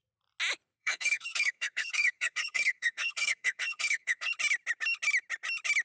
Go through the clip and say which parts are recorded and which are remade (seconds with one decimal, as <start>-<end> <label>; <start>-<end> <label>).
0.0-0.8 recorded; 0.8-4.3 remade; 4.3-5.8 recorded